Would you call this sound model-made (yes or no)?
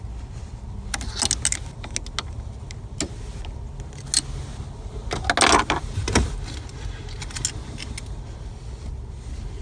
no